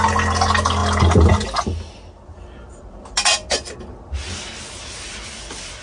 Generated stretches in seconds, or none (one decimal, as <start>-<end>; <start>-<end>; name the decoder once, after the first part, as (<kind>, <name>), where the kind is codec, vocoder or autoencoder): none